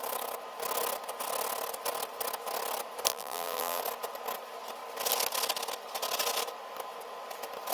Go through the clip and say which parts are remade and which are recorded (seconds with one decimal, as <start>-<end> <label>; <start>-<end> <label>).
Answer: 0.0-3.1 recorded; 3.1-3.8 remade; 3.8-7.7 recorded